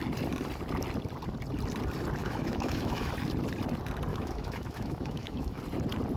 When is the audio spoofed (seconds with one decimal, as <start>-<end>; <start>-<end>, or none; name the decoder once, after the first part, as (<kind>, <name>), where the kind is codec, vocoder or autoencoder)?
2.2-3.1 (autoencoder, DAC-VAE); 4.1-5.6